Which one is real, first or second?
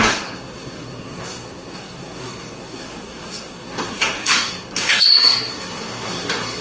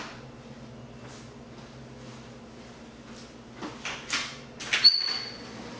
second